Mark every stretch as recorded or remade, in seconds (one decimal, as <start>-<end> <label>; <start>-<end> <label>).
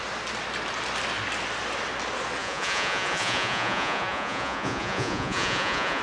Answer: 0.0-2.4 recorded; 2.4-6.0 remade